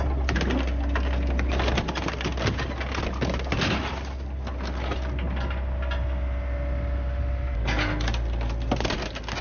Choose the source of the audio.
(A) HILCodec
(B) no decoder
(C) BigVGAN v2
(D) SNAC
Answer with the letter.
B